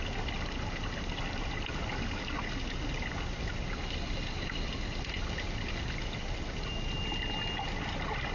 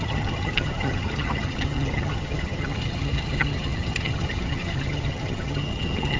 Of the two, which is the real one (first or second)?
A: first